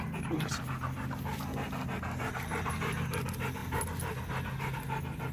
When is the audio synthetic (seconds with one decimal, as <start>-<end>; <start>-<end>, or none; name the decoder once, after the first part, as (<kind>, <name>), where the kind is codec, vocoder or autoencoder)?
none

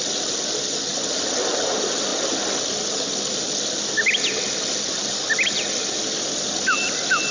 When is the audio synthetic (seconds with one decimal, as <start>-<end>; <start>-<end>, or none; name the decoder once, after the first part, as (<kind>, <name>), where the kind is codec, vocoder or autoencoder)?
none

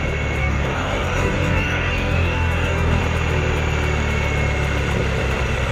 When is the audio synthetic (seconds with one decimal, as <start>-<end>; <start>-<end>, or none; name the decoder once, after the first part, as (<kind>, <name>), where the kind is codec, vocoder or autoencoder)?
0.4-3.0 (codec, DAC)